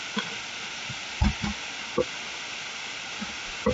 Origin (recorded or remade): recorded